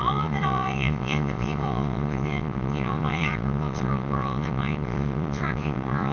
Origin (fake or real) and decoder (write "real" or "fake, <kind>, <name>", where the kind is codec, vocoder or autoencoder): fake, vocoder, Vocos